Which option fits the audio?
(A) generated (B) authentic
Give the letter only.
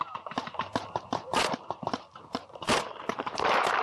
A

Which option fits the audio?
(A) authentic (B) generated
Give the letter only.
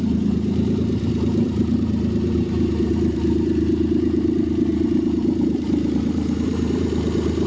B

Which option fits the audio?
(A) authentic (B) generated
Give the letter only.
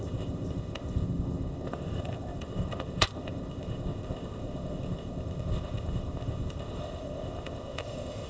B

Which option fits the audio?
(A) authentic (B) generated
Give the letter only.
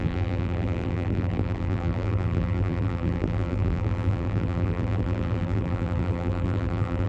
B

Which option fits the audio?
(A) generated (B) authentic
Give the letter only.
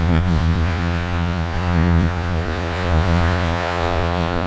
A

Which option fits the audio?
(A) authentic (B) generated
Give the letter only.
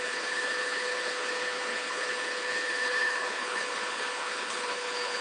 B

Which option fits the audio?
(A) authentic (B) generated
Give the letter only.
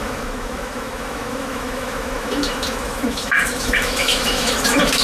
B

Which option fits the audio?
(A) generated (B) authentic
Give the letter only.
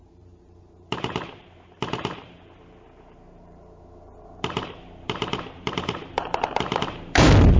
A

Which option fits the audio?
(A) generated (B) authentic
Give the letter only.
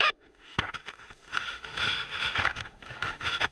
A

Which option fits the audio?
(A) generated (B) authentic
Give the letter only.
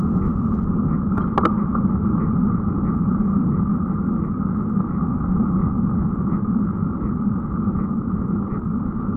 B